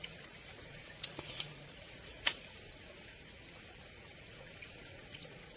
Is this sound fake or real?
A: fake